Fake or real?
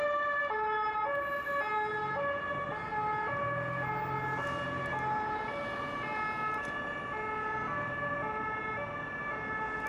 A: real